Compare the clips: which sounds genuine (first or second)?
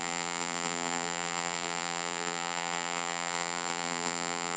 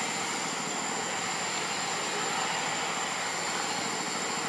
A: second